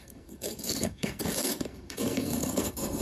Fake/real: fake